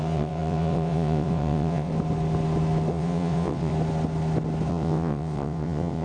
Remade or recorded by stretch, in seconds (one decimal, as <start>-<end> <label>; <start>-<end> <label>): 0.0-1.9 remade; 1.9-2.9 recorded; 2.9-3.7 remade; 3.7-4.7 recorded; 4.7-6.0 remade